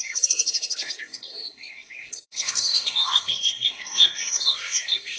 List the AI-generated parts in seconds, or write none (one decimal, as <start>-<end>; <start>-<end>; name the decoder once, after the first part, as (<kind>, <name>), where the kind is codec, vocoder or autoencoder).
0.0-5.2 (codec, SNAC)